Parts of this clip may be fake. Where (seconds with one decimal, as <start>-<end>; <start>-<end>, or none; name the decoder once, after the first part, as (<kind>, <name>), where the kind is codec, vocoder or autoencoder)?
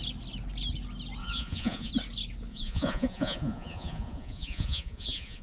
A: 1.2-1.9 (vocoder, Vocos); 2.5-5.4